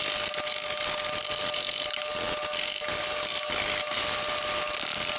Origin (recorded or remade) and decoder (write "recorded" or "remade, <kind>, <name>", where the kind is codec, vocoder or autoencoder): recorded